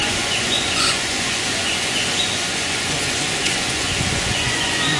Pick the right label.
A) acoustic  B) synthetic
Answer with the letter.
B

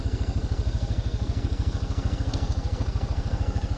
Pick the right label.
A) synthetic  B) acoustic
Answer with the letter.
A